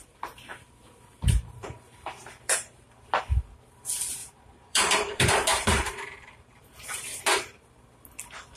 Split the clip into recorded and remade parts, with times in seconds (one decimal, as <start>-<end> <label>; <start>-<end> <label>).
0.0-0.5 recorded; 0.5-3.2 remade; 3.2-4.2 recorded; 4.2-7.2 remade; 7.2-8.6 recorded